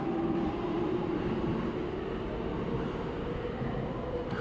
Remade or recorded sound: recorded